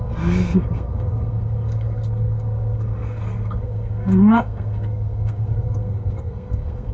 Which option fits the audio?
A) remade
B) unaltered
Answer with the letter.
A